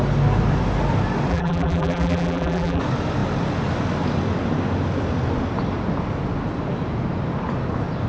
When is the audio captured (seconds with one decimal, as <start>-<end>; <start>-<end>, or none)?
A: 0.0-1.3; 2.8-8.1